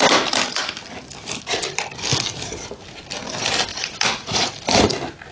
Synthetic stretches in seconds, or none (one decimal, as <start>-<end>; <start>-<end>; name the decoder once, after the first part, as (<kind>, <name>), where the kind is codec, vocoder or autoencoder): 3.7-4.5 (vocoder, Vocos)